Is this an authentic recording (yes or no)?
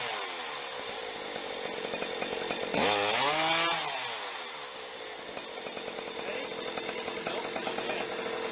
yes